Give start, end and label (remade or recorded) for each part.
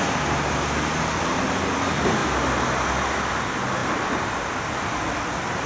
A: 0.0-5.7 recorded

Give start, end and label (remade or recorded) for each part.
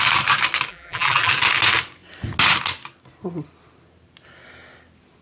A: 0.0-0.7 recorded; 0.7-1.3 remade; 1.3-5.2 recorded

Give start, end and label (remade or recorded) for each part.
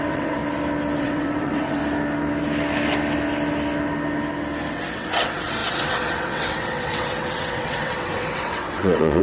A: 0.0-0.4 remade; 0.4-1.0 recorded; 1.0-1.8 remade; 1.8-4.7 recorded; 4.7-9.2 remade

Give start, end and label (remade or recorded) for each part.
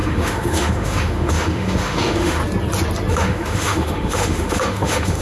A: 0.0-2.4 remade; 2.4-3.1 recorded; 3.1-5.2 remade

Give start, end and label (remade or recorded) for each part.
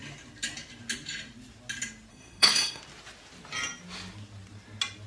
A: 0.0-2.1 recorded; 2.1-2.8 remade; 2.8-5.1 recorded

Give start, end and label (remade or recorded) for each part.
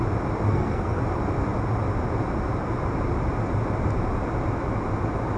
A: 0.0-0.5 recorded; 0.5-1.0 remade; 1.0-5.4 recorded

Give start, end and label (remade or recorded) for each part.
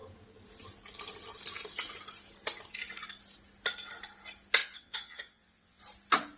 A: 0.0-4.6 recorded; 4.6-5.8 remade; 5.8-6.4 recorded